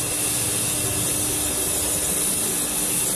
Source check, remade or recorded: recorded